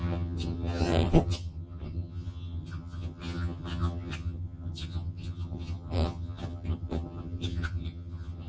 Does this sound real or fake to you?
fake